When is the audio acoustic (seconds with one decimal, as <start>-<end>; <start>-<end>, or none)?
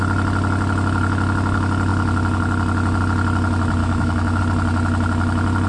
0.0-3.8; 4.4-5.7